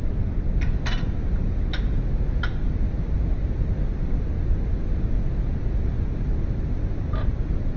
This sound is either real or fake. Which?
real